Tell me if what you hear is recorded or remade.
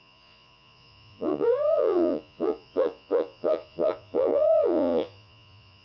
remade